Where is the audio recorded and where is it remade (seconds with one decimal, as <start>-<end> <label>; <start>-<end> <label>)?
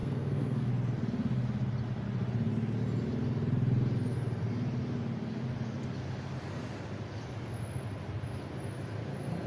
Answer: 0.0-0.7 remade; 0.7-9.5 recorded